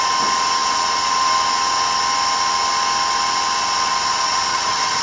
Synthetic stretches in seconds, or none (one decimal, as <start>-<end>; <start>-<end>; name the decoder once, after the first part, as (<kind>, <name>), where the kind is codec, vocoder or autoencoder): 4.5-5.0 (vocoder, HiFi-GAN)

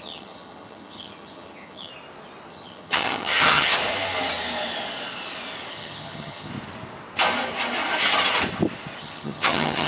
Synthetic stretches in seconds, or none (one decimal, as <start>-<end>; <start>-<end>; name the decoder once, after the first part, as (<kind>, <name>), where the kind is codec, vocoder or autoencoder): 0.0-1.9 (vocoder, HiFi-GAN); 2.5-3.7; 5.7-6.5; 9.0-9.9

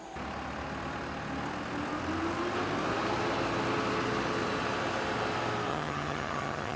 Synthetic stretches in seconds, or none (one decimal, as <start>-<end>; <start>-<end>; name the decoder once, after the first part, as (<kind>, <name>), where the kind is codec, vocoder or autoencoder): 5.7-6.8 (vocoder, HiFi-GAN)